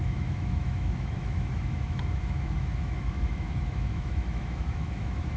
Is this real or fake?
fake